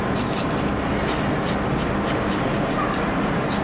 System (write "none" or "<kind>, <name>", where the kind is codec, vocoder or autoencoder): none